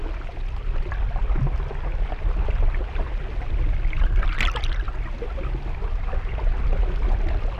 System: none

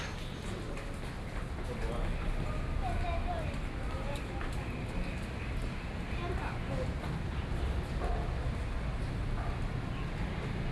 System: none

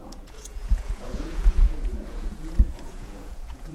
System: vocoder, Vocos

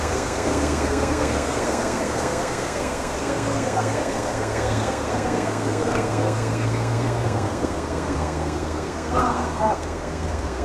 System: codec, SNAC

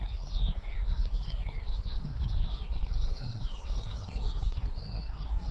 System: codec, SNAC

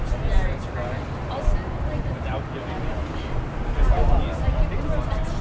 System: none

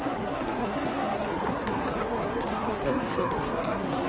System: codec, SNAC